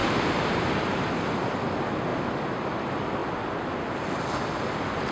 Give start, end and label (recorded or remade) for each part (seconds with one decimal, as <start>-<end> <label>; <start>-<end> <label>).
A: 0.0-1.5 remade; 1.5-2.1 recorded; 2.1-2.8 remade; 2.8-5.1 recorded

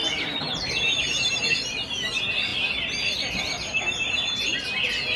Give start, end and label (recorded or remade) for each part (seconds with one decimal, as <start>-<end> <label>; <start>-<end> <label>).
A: 0.0-2.5 remade; 2.5-3.4 recorded; 3.4-4.5 remade; 4.5-5.2 recorded